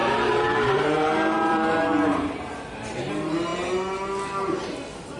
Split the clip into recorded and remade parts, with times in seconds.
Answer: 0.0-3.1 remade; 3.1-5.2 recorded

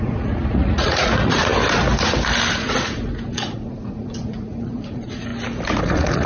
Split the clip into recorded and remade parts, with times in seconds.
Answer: 0.0-1.5 remade; 1.5-2.5 recorded; 2.5-5.3 remade; 5.3-5.8 recorded; 5.8-6.3 remade

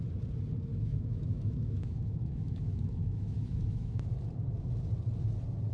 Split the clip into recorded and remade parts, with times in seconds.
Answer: 0.0-0.7 recorded; 0.7-4.1 remade; 4.1-5.7 recorded

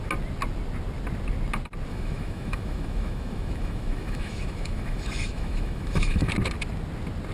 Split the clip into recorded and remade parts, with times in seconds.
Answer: 0.0-1.9 recorded; 1.9-6.3 remade; 6.3-7.3 recorded

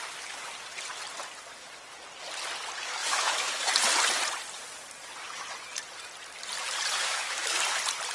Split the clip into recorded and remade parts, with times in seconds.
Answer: 0.0-3.0 recorded; 3.0-3.7 remade; 3.7-7.0 recorded; 7.0-7.6 remade; 7.6-8.1 recorded